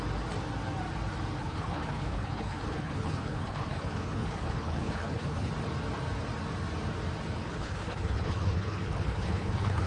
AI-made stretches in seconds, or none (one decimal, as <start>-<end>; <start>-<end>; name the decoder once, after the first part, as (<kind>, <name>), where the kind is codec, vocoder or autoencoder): 1.4-5.5 (codec, HILCodec); 7.4-9.9